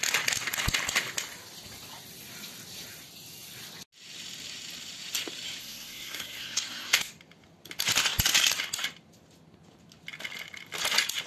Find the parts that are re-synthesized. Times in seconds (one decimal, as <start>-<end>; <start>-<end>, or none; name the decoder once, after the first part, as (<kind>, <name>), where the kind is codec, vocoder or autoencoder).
5.6-7.1 (codec, SNAC)